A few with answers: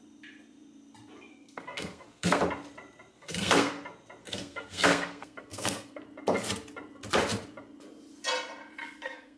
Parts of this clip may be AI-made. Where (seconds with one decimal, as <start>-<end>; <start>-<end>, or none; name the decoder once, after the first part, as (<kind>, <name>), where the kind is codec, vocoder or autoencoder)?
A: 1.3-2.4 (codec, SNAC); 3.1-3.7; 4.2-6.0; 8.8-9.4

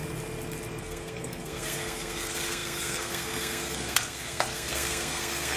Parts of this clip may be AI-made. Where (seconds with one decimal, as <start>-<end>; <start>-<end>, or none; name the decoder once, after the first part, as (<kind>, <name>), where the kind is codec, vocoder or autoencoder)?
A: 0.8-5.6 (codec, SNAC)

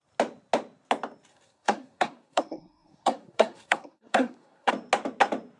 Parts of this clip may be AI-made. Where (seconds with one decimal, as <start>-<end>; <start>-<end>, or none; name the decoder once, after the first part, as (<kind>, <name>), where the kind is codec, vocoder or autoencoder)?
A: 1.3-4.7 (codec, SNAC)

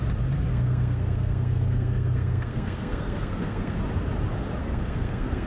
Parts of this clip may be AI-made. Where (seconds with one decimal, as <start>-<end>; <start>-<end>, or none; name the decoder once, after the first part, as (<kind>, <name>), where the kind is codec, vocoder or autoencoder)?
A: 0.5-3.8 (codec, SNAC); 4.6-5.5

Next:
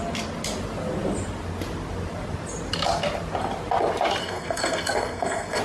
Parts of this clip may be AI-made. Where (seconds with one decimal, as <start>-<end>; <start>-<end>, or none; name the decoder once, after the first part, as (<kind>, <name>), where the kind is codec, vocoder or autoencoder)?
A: 4.2-5.6 (codec, SNAC)

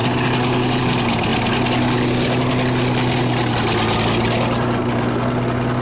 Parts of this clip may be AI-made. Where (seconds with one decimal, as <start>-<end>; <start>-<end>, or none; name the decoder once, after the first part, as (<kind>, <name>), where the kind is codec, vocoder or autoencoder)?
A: none

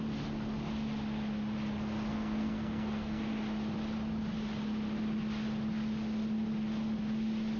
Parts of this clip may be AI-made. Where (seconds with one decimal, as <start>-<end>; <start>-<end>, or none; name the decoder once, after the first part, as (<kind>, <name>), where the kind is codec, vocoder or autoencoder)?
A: 2.1-3.2 (codec, SNAC)

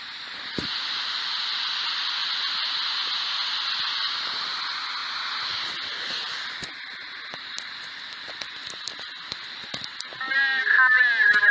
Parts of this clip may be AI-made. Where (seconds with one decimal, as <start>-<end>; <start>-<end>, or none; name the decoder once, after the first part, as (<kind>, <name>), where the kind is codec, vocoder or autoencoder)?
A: none